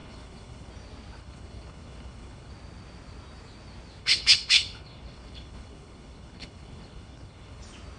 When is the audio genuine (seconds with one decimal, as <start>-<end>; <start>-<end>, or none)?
0.7-1.2; 2.5-4.0; 7.6-8.0